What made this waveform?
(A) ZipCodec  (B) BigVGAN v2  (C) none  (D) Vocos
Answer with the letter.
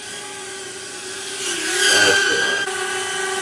C